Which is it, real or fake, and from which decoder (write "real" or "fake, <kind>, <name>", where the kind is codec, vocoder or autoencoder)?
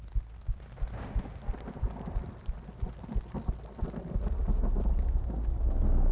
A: real